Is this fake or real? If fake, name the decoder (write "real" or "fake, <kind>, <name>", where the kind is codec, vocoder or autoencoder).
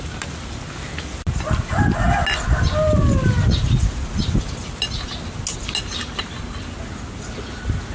real